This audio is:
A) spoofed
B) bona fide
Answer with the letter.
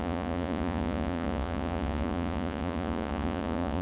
A